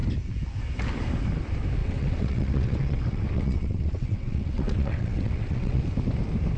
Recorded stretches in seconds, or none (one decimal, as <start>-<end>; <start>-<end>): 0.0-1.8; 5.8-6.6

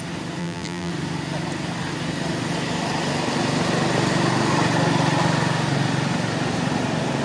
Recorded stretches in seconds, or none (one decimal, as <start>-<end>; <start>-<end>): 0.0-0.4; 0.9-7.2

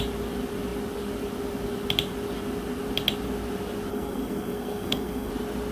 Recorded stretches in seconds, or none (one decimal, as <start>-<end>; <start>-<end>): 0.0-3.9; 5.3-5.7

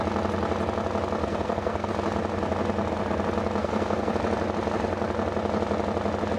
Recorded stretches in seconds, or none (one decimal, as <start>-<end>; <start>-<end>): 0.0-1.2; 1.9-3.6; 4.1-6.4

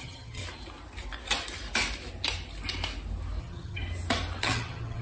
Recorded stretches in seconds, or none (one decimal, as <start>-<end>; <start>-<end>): 0.4-3.4; 3.8-4.4

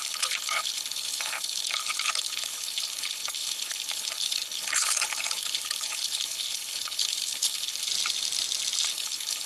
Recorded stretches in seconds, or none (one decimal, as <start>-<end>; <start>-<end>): 7.9-8.9

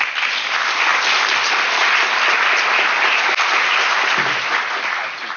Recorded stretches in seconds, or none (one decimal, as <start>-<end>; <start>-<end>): 0.0-5.4

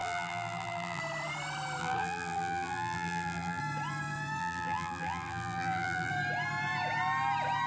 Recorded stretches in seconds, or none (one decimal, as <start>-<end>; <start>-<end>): 1.0-1.8; 3.6-4.4; 6.1-7.7